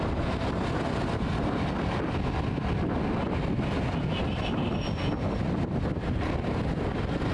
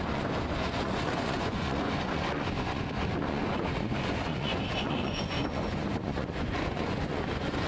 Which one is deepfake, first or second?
second